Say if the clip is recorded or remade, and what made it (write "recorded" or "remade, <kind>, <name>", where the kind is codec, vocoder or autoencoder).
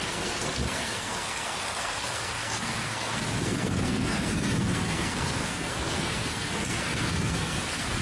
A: remade, codec, SNAC